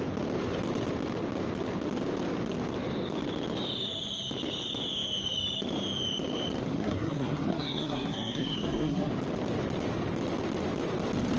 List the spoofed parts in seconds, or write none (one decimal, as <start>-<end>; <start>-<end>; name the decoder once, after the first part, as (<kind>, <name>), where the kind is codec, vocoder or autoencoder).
6.6-9.1 (codec, SNAC)